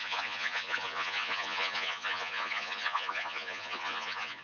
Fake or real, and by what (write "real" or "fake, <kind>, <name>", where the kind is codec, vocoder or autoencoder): fake, vocoder, Vocos